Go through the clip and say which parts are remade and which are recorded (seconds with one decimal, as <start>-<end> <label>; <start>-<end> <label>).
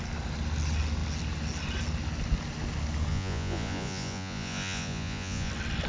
0.0-3.1 recorded; 3.1-5.5 remade; 5.5-5.9 recorded